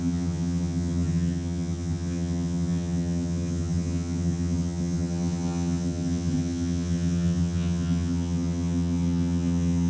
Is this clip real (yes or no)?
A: no